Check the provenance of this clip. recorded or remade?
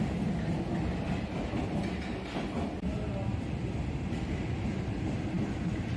recorded